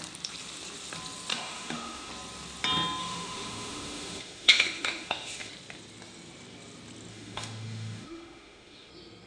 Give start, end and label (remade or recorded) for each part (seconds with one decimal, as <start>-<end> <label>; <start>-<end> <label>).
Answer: 0.0-1.3 recorded; 1.3-2.1 remade; 2.1-3.0 recorded; 3.0-5.5 remade; 5.5-7.1 recorded; 7.1-8.9 remade; 8.9-9.3 recorded